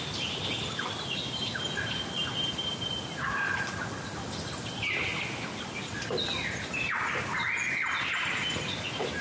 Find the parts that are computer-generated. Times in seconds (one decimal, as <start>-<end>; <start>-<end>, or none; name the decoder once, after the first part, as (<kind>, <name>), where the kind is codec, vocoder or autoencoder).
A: none

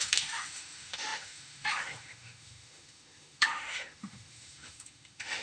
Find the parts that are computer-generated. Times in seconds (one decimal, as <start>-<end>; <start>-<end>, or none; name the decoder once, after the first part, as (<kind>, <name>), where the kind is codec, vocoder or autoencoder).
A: 0.0-5.4 (autoencoder, DAC-VAE)

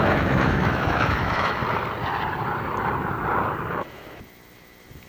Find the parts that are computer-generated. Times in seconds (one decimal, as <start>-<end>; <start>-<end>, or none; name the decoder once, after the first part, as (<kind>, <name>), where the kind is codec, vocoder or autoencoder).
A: 0.0-1.6 (autoencoder, DAC-VAE); 3.7-5.1

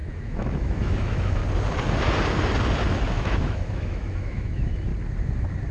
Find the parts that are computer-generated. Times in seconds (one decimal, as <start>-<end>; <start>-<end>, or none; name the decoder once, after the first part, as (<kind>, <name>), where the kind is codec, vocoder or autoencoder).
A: 0.0-1.4 (autoencoder, DAC-VAE); 3.1-4.9

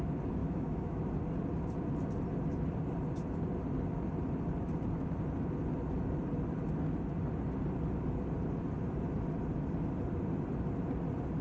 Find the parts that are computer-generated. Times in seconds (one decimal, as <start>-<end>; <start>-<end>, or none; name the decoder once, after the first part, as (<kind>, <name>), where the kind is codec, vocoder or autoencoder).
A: 0.4-1.0 (autoencoder, DAC-VAE)

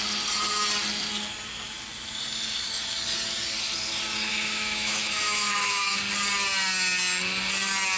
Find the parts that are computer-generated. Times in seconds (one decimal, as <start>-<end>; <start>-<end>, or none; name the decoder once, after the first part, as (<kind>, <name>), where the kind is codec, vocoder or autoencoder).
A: 4.3-6.0 (autoencoder, DAC-VAE)

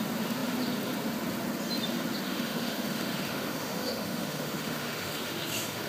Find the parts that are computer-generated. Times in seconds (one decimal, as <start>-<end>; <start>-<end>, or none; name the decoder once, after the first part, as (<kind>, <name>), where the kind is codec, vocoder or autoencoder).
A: 2.3-5.9 (autoencoder, DAC-VAE)